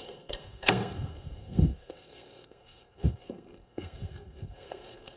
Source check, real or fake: fake